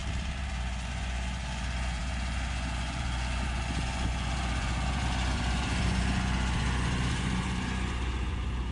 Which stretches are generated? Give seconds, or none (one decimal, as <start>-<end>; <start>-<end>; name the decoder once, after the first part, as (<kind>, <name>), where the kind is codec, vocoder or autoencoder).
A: 0.5-8.7 (vocoder, Vocos)

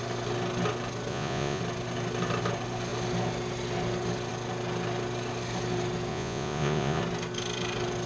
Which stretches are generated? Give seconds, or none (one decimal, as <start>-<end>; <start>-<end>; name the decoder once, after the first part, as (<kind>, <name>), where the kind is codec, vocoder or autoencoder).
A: 1.1-1.6 (vocoder, Vocos); 6.1-7.0

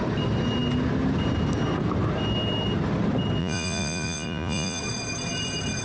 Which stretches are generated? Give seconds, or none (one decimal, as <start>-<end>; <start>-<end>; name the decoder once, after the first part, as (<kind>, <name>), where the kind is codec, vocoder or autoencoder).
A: 3.4-4.8 (vocoder, Vocos)

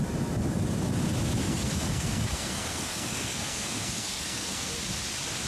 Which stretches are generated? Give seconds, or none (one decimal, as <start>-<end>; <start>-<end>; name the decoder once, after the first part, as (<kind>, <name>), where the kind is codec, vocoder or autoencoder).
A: 1.4-4.7 (codec, SNAC)

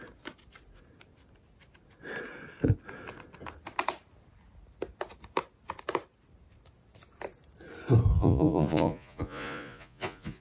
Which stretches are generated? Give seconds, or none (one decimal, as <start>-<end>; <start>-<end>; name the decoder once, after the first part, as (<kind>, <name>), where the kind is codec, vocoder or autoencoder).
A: 8.1-10.4 (vocoder, Vocos)